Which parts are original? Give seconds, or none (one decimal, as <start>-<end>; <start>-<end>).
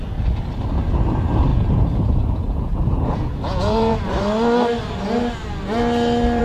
0.0-1.5; 4.0-6.4